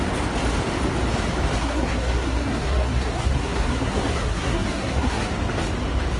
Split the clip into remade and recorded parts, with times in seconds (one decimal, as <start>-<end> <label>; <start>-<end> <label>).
0.0-1.6 recorded; 1.6-5.3 remade; 5.3-6.2 recorded